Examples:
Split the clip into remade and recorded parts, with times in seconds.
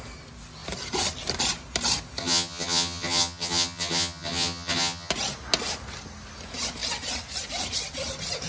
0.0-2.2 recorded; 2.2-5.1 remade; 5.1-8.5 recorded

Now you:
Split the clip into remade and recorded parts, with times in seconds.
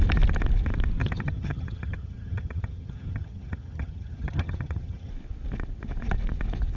0.0-1.0 recorded; 1.0-5.1 remade; 5.1-6.8 recorded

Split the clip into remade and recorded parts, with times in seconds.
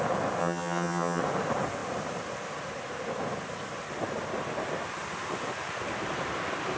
0.0-0.4 recorded; 0.4-1.2 remade; 1.2-6.8 recorded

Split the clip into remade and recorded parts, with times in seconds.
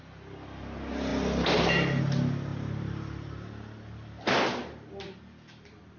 0.0-6.0 recorded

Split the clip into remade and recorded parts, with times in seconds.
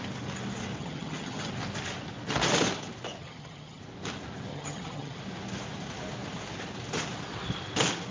0.0-0.8 recorded; 0.8-1.5 remade; 1.5-3.2 recorded; 3.2-3.8 remade; 3.8-4.5 recorded; 4.5-5.2 remade; 5.2-8.1 recorded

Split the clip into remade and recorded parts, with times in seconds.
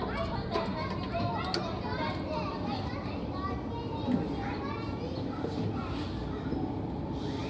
0.0-7.5 recorded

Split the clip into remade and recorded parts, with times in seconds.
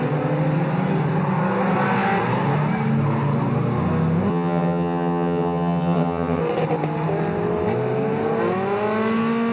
0.0-4.3 recorded; 4.3-6.4 remade; 6.4-9.5 recorded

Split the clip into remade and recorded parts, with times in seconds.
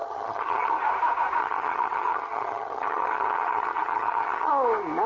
0.0-0.7 remade; 0.7-1.4 recorded; 1.4-4.5 remade; 4.5-5.1 recorded